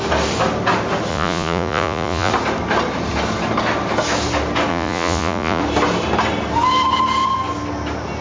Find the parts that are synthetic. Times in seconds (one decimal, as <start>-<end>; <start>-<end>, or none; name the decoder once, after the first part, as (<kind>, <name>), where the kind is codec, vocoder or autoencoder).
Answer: 1.1-2.3 (vocoder, Vocos); 4.7-5.6